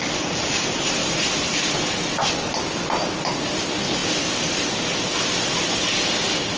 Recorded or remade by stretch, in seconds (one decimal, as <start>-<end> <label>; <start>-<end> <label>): 0.0-6.6 recorded